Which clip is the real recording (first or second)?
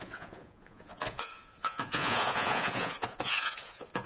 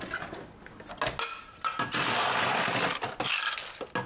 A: second